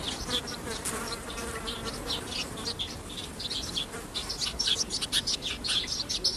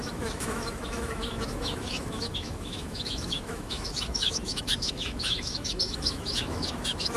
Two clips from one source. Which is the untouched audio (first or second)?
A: first